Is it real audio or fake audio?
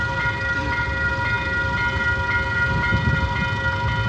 real